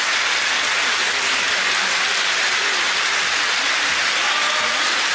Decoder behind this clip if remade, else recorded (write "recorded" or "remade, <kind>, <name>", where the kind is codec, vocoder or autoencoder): recorded